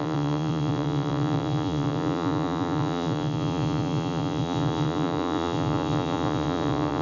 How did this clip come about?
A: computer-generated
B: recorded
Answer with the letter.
A